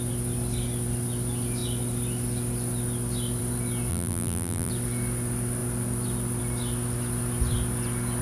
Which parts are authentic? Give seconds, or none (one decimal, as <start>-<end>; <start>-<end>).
0.0-3.9; 4.7-8.2